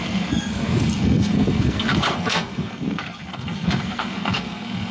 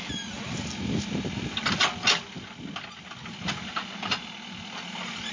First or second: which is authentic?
second